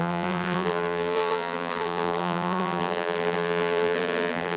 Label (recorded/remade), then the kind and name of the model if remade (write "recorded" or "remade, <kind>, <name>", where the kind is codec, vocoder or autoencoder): remade, vocoder, BigVGAN v2